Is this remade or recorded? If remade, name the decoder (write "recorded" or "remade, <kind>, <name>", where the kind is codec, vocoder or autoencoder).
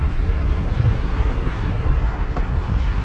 remade, codec, SNAC